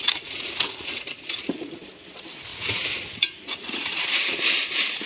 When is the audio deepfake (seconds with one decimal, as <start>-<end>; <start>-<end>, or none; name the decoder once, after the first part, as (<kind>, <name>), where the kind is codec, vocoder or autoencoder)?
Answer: 0.0-1.9 (vocoder, Vocos); 2.5-4.4

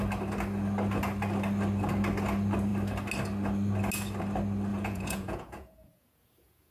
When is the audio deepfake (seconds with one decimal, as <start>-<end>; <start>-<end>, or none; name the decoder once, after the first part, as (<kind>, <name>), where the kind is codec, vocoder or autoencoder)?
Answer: 4.7-6.7 (vocoder, Vocos)

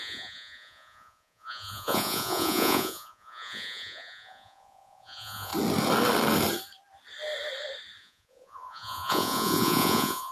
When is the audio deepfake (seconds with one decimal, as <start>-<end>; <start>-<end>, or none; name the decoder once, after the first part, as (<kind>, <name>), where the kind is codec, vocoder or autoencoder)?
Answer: 0.0-5.5 (vocoder, Vocos); 8.0-10.3

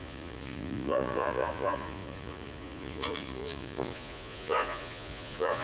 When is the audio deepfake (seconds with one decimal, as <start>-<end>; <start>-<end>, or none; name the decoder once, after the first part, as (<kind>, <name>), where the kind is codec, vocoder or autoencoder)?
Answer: 0.0-5.6 (vocoder, Vocos)

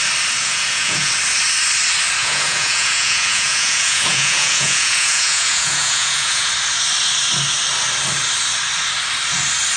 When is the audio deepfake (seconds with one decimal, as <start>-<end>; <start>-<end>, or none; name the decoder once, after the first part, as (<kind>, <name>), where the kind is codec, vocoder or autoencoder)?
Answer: 0.4-1.1 (vocoder, Vocos); 2.2-6.5

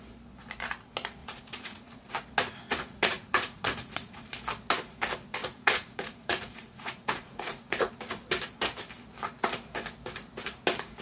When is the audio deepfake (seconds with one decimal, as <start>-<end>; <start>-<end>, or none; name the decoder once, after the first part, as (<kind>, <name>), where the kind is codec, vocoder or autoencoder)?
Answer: 1.2-2.1 (vocoder, Vocos); 2.7-4.3; 5.4-7.9

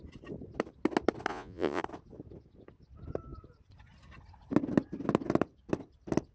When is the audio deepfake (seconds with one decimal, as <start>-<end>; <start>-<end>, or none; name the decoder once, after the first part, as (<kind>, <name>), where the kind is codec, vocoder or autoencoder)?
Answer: 1.3-1.8 (vocoder, Vocos)

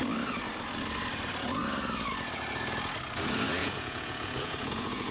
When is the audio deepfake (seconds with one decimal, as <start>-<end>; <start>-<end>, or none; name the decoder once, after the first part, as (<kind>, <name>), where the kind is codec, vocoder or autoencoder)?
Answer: 3.6-5.1 (vocoder, Vocos)